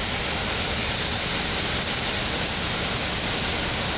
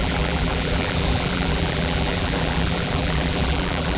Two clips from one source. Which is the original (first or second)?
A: first